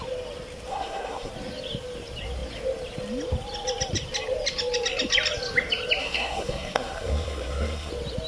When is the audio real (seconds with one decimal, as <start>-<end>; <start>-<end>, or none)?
0.0-0.7; 1.3-6.0; 7.9-8.3